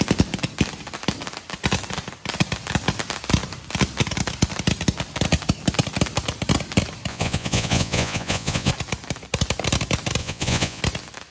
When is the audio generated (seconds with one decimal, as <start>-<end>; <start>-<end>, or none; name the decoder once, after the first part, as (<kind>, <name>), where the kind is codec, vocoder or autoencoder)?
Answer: 7.1-8.7 (vocoder, Vocos); 10.2-10.8